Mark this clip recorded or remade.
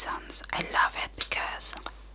recorded